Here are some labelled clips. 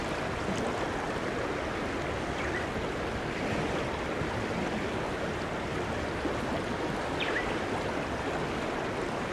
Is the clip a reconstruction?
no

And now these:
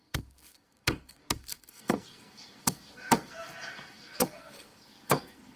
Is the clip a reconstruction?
yes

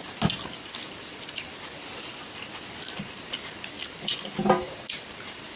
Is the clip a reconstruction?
no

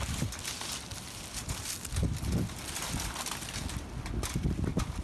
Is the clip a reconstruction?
no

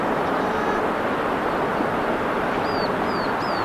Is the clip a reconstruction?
no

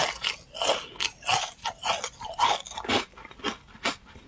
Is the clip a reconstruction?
no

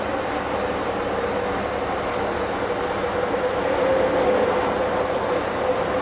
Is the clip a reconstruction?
no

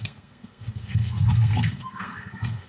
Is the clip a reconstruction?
yes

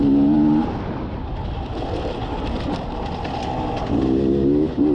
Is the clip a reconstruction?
no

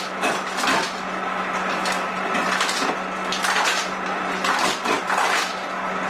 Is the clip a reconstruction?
no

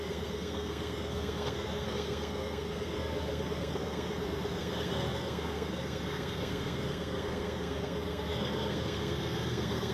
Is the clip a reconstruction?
yes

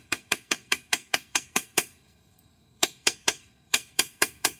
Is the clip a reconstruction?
yes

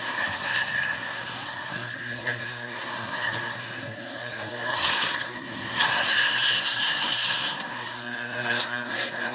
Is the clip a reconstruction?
yes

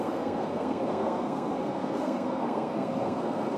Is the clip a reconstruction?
yes